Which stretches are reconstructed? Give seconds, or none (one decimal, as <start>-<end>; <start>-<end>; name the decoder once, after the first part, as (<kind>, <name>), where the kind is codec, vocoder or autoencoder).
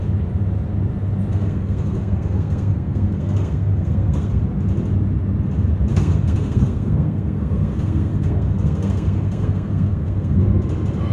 1.3-4.4 (codec, SNAC); 5.9-10.4